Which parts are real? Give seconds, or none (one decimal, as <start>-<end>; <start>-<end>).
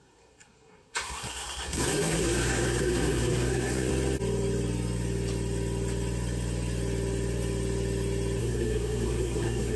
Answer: 3.9-8.4